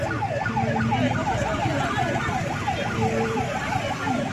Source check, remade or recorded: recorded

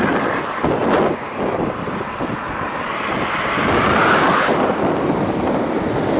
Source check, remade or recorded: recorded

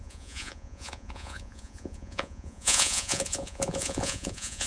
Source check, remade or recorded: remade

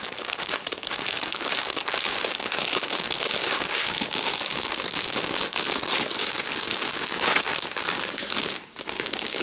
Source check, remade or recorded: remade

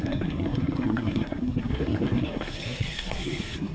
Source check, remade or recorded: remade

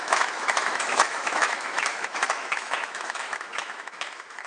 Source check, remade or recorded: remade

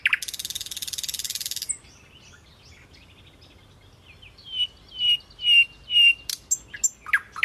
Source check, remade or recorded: recorded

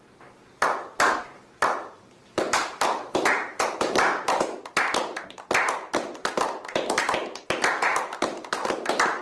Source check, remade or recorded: remade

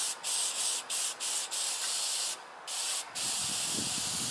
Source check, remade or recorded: recorded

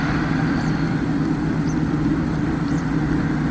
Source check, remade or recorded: recorded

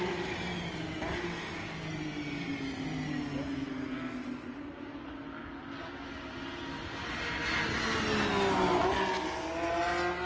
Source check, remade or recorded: recorded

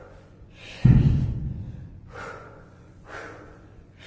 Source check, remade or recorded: remade